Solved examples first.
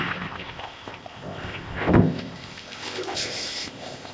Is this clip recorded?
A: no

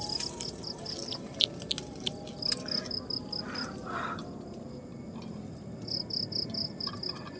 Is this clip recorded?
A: yes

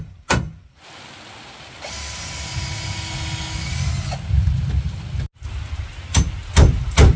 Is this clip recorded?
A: yes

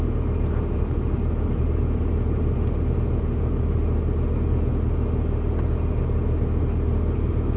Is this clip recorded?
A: yes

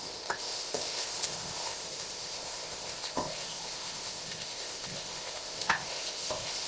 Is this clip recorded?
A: no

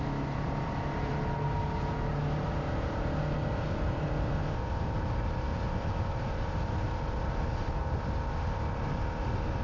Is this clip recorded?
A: yes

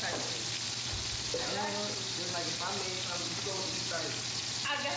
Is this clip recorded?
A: yes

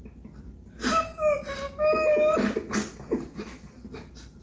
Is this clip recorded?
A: yes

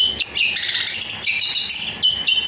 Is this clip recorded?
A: yes